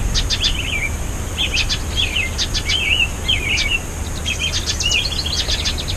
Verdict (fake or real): real